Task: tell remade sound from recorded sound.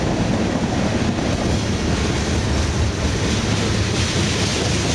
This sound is recorded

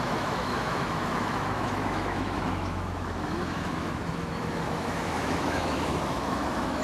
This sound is remade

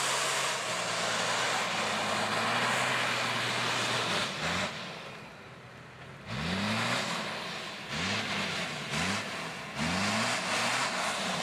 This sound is recorded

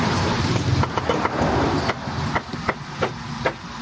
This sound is recorded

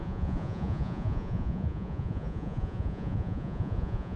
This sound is remade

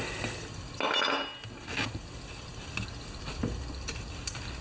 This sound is recorded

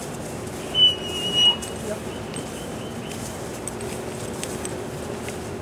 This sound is recorded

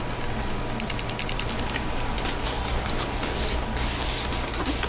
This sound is recorded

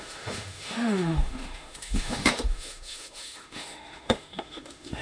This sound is remade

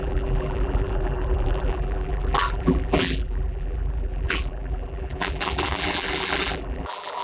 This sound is remade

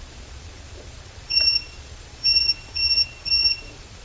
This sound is remade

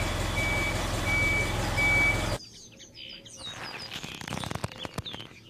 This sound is recorded